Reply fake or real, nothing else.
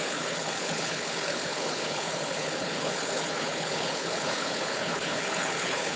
fake